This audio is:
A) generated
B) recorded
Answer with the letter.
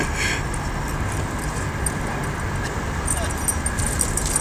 B